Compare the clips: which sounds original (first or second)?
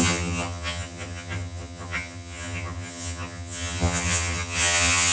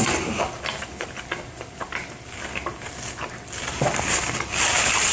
second